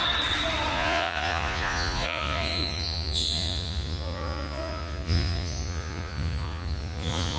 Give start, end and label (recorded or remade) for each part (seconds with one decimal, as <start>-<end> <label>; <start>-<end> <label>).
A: 0.0-0.7 recorded; 0.7-7.4 remade